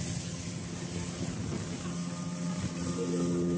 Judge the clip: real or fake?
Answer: real